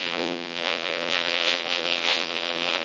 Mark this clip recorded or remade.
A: remade